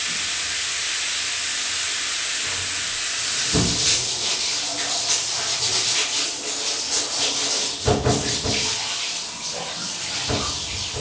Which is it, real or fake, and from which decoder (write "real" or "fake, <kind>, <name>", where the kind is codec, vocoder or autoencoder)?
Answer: real